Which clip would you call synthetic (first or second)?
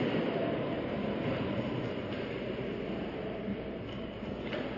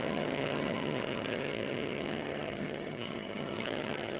second